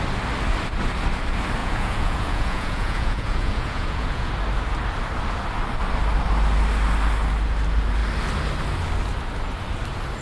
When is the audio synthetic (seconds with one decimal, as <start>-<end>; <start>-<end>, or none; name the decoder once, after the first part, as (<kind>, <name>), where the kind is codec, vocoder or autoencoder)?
1.6-4.3 (vocoder, Vocos)